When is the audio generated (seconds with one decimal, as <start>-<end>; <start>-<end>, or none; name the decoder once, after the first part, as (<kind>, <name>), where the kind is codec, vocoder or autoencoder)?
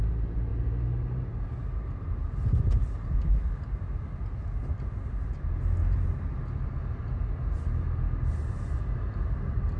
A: 5.8-6.4 (vocoder, BigVGAN v2)